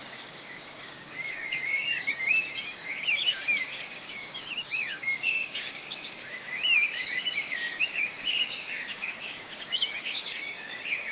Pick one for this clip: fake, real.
fake